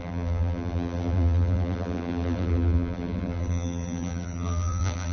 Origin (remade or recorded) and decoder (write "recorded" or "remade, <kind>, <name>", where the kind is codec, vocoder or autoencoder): remade, vocoder, BigVGAN v2